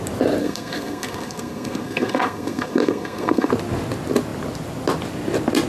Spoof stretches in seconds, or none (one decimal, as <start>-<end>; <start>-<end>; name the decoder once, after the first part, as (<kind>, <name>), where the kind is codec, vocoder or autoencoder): 0.4-3.5 (codec, SNAC)